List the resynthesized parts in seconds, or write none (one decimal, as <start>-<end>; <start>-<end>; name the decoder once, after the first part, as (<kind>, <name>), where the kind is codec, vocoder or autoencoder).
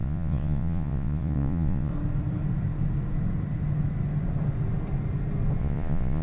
0.0-1.9 (vocoder, Vocos); 5.6-6.2